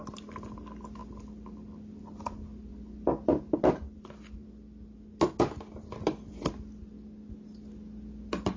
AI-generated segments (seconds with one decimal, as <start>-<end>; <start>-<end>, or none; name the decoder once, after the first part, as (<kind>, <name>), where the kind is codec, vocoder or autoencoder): none